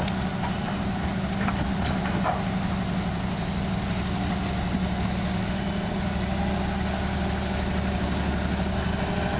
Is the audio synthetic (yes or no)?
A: no